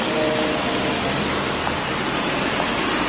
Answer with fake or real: real